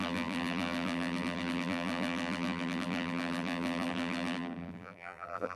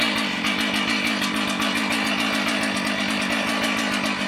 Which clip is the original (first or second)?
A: second